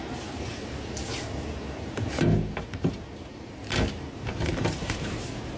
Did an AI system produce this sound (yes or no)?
no